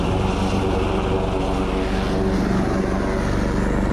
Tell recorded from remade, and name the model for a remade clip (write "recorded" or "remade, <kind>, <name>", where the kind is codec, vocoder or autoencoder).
recorded